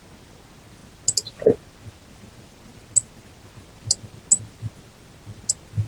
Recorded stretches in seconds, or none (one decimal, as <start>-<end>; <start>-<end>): 0.0-5.9